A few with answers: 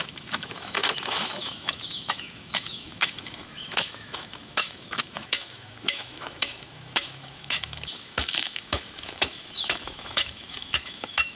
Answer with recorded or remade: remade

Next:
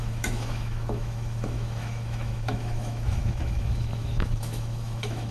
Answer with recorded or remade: remade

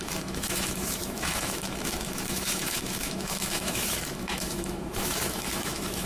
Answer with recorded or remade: remade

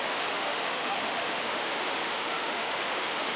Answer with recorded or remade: remade